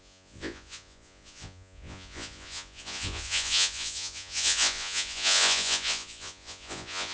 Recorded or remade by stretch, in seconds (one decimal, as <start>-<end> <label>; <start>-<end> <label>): 0.0-7.1 remade